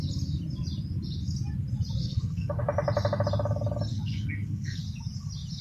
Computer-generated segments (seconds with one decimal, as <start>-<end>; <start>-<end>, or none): 2.0-2.6; 3.9-4.8